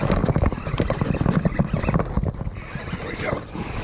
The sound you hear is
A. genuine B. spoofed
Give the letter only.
A